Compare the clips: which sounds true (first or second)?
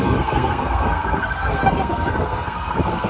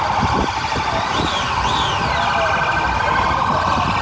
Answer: second